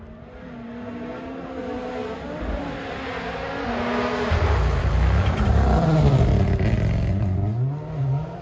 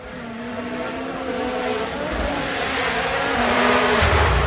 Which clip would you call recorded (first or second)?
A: first